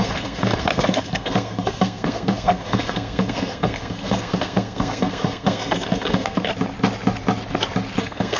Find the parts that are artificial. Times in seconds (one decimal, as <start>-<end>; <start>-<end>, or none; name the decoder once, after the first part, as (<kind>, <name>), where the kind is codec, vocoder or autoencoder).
0.0-6.5 (codec, SNAC); 8.0-8.4